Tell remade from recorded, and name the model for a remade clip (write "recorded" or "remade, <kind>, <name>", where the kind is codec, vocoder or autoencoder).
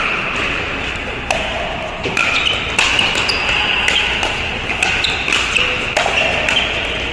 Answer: recorded